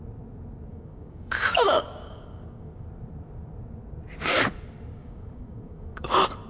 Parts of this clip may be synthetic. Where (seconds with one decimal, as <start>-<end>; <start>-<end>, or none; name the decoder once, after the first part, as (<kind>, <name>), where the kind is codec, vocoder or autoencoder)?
0.7-2.9 (codec, DAC); 5.0-6.1